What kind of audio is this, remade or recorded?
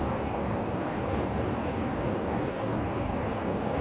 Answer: remade